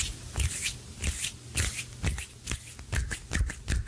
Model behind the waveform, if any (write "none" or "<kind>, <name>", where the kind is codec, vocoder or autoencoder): none